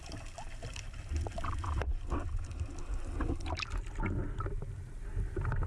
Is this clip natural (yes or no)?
yes